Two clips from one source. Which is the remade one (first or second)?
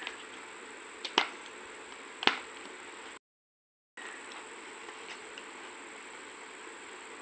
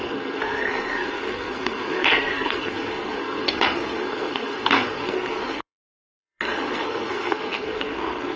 second